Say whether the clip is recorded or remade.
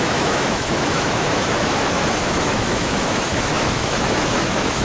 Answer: remade